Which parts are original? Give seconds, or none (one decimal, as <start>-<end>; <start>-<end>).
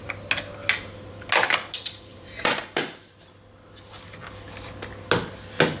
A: 0.0-2.1; 3.3-5.8